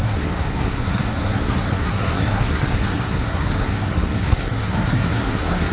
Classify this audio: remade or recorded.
remade